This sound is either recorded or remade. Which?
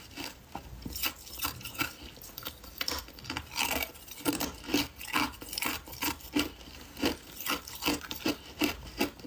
recorded